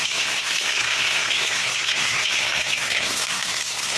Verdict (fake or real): fake